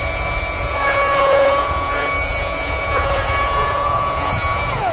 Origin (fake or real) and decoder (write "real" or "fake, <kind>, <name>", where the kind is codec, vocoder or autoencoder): fake, vocoder, Vocos